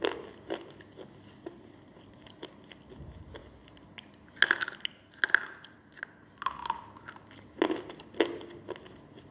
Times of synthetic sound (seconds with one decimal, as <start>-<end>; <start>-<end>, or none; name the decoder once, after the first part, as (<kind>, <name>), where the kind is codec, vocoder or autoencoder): none